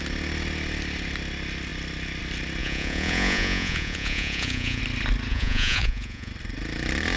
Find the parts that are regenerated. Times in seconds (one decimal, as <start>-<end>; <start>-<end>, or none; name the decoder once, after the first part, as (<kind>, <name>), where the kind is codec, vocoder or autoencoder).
2.6-4.8 (vocoder, Vocos); 5.3-6.3